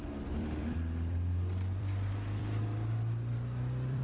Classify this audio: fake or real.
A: fake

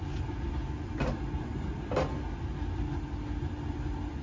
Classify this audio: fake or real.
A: real